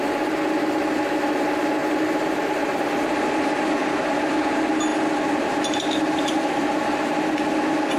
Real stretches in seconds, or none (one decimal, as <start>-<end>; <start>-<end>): 0.0-1.8; 3.6-8.0